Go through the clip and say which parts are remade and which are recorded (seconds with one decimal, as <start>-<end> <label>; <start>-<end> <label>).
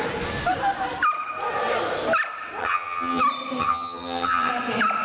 0.0-2.6 recorded; 2.6-3.2 remade; 3.2-3.6 recorded; 3.6-4.5 remade; 4.5-5.0 recorded